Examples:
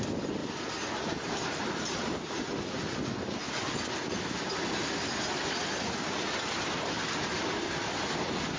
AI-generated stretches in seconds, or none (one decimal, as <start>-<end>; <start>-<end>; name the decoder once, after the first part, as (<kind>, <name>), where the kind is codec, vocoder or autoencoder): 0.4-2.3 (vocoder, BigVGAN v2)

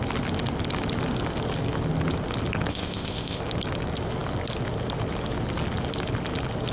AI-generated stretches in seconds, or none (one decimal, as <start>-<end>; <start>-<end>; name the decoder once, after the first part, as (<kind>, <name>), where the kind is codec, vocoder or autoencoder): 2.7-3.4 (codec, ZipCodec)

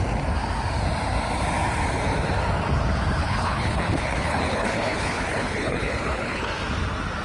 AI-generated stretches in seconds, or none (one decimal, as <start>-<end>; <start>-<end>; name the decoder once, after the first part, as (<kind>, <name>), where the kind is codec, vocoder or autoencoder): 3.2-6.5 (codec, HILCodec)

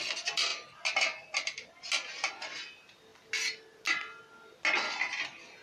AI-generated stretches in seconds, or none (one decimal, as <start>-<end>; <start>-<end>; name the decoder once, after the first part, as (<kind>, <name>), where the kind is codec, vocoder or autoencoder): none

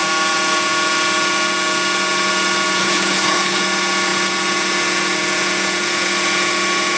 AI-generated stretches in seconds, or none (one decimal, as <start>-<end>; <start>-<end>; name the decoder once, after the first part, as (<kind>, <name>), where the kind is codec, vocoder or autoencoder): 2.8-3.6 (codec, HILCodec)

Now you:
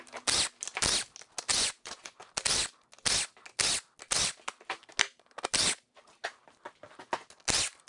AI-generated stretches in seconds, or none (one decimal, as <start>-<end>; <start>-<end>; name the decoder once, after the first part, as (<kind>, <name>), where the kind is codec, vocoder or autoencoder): 1.5-2.2 (vocoder, Vocos)

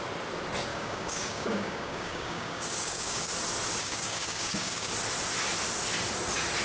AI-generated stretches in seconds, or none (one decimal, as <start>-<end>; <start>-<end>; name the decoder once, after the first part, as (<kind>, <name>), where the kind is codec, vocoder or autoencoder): 0.7-3.3 (codec, DAC); 3.8-4.9